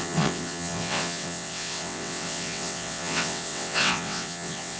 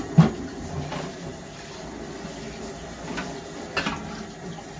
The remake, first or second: first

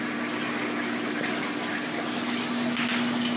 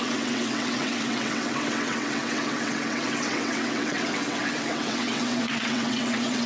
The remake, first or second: second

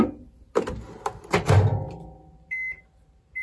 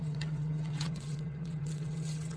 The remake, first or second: second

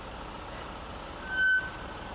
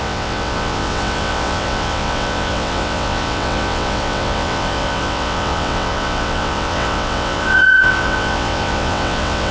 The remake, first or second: second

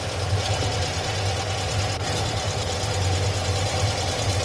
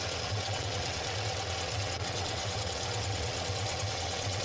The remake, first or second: second